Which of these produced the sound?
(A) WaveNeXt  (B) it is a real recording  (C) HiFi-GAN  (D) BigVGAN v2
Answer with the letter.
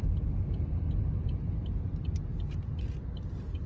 B